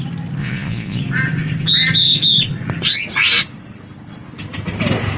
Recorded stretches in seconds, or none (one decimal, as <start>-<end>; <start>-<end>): 0.0-0.4; 1.0-5.2